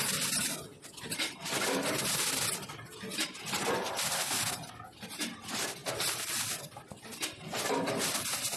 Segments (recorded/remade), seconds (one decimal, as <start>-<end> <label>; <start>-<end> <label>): 0.0-8.6 recorded